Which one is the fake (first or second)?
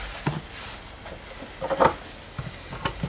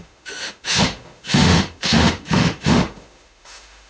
second